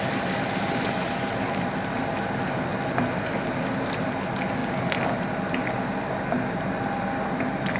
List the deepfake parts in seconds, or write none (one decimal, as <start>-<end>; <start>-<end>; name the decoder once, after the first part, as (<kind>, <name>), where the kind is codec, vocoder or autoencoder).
none